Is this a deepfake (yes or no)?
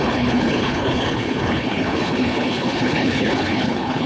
yes